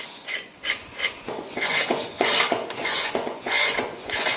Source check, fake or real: fake